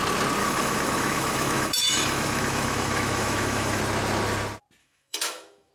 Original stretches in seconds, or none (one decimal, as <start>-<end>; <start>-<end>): 0.0-0.4; 3.8-4.8